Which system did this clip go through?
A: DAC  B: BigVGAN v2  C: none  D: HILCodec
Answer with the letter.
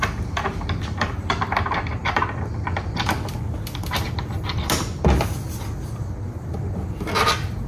C